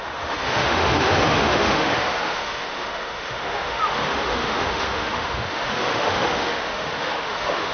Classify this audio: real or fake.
fake